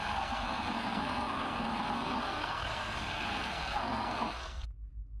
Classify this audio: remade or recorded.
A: remade